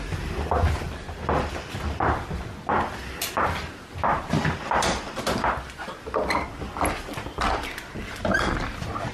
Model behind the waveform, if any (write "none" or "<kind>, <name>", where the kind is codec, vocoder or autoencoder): none